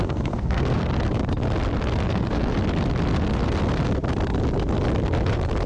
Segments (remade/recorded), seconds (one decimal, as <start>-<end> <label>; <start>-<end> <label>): 0.0-0.8 remade; 0.8-2.1 recorded; 2.1-2.5 remade; 2.5-5.7 recorded